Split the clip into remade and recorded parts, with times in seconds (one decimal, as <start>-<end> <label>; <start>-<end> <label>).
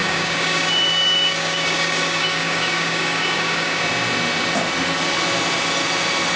0.0-3.8 remade; 3.8-6.4 recorded